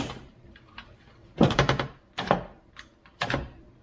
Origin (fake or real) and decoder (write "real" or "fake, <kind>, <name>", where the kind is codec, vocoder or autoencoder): fake, vocoder, BigVGAN v2